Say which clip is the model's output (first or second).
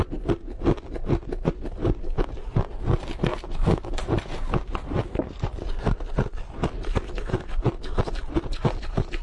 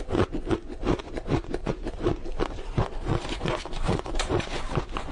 second